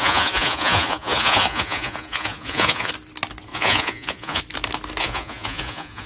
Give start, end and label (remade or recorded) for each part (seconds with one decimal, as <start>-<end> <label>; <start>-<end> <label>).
0.0-2.9 remade; 2.9-3.5 recorded; 3.5-4.4 remade; 4.4-5.0 recorded; 5.0-6.1 remade